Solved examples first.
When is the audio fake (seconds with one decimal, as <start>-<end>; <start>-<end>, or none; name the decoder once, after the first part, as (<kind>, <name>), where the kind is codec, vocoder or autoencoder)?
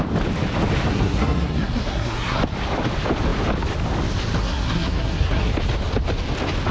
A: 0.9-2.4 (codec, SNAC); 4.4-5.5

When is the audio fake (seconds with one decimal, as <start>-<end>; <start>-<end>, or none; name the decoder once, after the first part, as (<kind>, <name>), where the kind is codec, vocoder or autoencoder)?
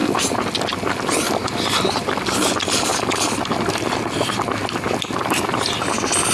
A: none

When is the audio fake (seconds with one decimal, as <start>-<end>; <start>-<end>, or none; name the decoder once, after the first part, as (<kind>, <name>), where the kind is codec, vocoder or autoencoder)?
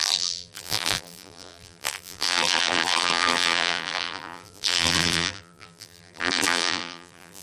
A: 0.0-7.4 (vocoder, BigVGAN v2)